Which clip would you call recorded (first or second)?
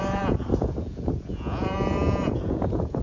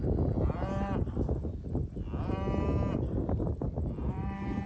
second